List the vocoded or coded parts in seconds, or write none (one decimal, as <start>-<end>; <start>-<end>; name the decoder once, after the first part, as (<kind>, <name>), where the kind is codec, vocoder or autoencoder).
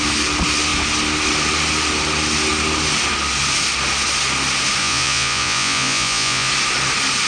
4.8-6.5 (vocoder, Vocos)